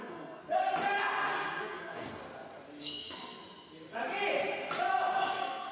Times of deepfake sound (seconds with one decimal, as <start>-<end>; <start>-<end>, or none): 0.0-0.6; 1.6-2.2; 2.8-3.4; 5.3-5.7